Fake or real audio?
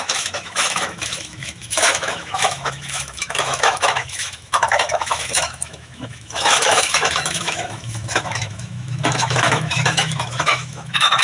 fake